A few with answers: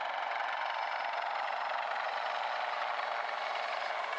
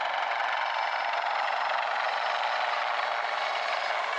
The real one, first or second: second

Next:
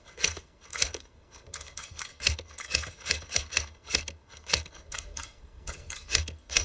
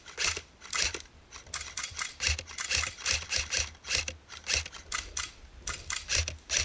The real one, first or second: second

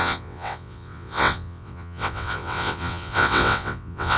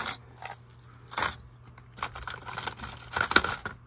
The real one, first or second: second